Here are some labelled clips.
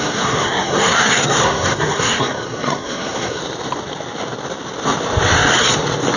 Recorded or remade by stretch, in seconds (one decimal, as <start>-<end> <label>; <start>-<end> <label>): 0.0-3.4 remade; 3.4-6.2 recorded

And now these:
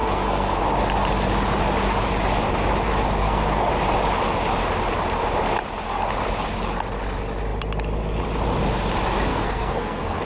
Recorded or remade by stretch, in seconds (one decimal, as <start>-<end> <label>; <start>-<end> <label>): 0.0-0.6 remade; 0.6-3.2 recorded; 3.2-3.7 remade; 3.7-9.3 recorded; 9.3-10.2 remade

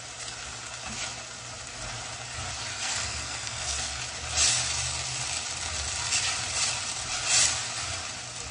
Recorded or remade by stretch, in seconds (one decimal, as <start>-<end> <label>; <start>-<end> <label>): 0.0-2.7 recorded; 2.7-4.0 remade; 4.0-8.5 recorded